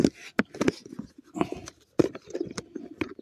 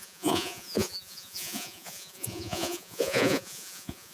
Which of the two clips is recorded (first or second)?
first